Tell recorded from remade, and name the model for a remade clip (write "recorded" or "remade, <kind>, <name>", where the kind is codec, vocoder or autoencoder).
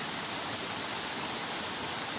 remade, vocoder, BigVGAN v2